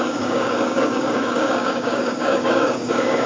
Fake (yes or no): yes